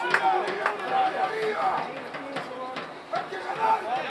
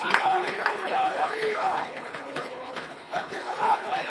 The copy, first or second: second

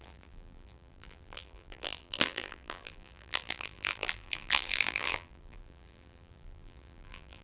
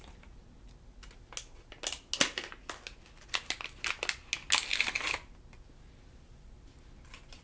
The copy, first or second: first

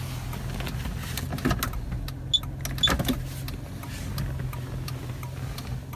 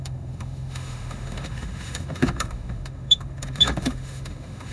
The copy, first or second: second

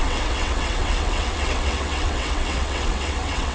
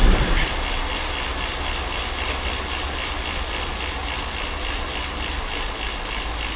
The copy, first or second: first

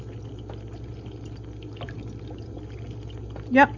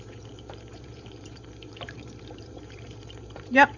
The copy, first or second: second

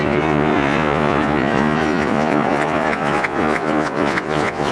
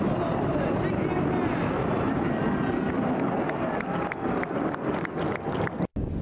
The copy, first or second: first